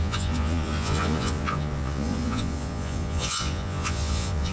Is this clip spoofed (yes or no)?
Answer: yes